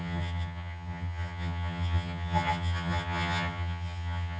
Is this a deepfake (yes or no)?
yes